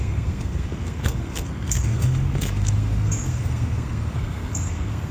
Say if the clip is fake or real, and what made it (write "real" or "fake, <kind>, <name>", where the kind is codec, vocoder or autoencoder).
fake, codec, SNAC